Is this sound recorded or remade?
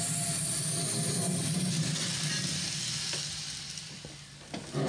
recorded